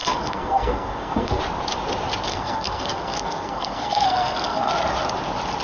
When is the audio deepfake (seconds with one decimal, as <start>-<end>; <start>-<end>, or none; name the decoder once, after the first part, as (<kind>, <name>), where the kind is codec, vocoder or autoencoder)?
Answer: 0.0-1.4 (codec, SNAC); 2.3-4.7